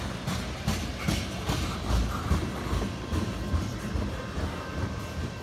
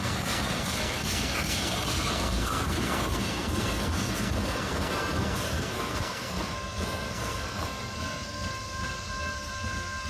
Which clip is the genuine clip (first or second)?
first